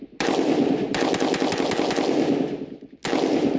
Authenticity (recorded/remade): recorded